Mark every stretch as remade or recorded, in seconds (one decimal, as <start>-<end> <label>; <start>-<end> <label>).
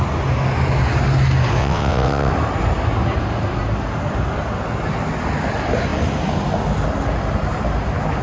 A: 0.0-1.6 recorded; 1.6-2.3 remade; 2.3-8.2 recorded